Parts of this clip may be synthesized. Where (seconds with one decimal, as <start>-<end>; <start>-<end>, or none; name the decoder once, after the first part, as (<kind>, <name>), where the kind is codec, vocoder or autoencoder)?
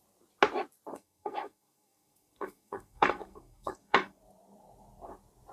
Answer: 0.9-4.2 (codec, SNAC)